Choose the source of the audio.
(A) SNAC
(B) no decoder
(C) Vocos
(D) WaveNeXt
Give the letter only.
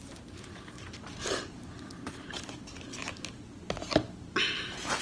B